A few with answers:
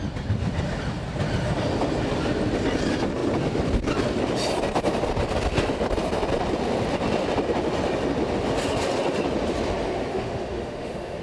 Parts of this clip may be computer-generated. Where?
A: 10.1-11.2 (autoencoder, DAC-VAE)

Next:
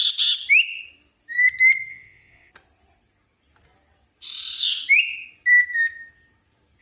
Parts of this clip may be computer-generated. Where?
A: 1.9-2.5 (vocoder, WaveNeXt)

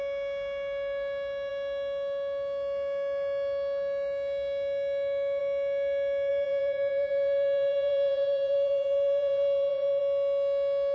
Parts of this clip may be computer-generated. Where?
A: 6.3-10.0 (vocoder, BigVGAN v2)